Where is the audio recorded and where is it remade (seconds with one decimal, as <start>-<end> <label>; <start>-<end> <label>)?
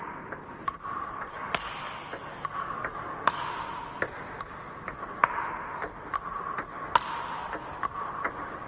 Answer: 0.0-1.3 recorded; 1.3-3.4 remade; 3.4-8.7 recorded